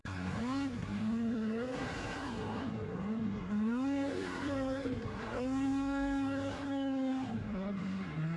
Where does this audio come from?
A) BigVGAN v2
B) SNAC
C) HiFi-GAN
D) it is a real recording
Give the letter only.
B